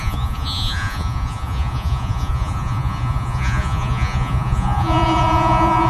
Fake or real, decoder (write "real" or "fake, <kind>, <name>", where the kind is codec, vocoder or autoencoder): fake, vocoder, Vocos